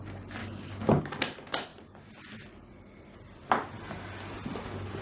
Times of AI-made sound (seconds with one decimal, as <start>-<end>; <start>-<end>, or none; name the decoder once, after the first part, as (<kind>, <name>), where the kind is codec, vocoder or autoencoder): 0.4-1.0 (codec, DAC)

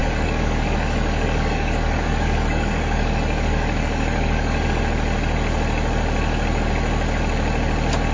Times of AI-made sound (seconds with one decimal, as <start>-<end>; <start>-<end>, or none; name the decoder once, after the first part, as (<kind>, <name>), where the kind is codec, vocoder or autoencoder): 0.0-4.8 (codec, DAC)

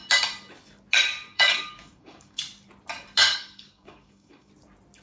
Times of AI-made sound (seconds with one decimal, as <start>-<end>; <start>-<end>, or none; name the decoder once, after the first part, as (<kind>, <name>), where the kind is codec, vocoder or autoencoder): 1.3-2.4 (codec, DAC); 3.3-4.5

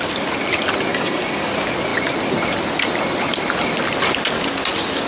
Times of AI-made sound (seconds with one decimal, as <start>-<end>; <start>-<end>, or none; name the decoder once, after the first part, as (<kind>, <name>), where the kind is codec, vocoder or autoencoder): 0.9-1.5 (codec, DAC)

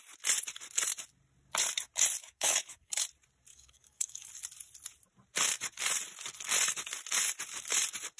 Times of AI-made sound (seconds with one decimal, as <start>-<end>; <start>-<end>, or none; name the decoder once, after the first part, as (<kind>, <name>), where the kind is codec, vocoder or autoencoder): 2.2-3.0 (codec, DAC); 3.5-4.3